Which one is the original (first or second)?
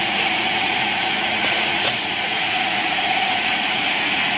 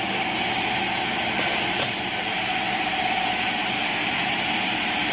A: second